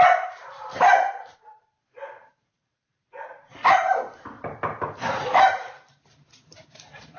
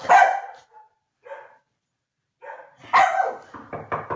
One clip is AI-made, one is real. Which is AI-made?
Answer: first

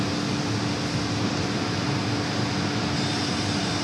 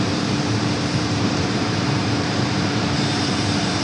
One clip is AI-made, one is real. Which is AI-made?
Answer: second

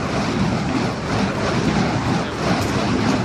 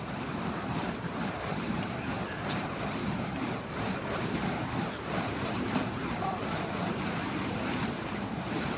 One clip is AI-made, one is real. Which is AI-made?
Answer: second